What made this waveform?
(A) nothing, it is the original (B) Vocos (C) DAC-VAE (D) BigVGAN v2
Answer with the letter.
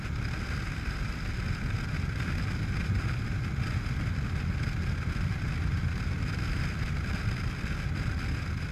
A